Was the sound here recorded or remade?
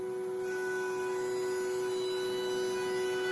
recorded